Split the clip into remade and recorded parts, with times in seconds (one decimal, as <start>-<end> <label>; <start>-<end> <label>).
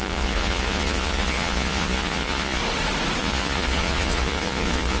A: 0.0-2.6 remade; 2.6-3.2 recorded; 3.2-5.0 remade